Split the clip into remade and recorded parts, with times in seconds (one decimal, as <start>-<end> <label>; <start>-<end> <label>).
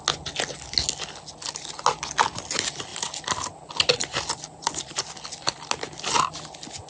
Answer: 0.0-6.9 recorded